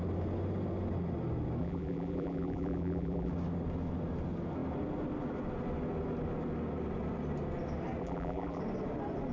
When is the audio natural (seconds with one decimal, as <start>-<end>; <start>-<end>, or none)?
0.0-1.6; 3.3-8.0; 8.6-9.3